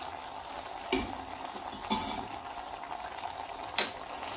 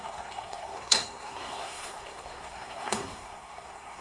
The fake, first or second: second